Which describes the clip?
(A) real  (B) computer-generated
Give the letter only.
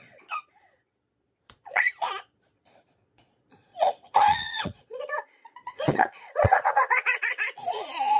B